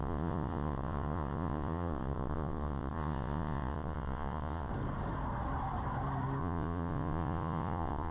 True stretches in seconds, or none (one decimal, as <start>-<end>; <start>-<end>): 4.7-6.4